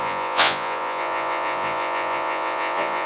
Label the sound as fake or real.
fake